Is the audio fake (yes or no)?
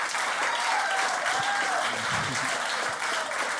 no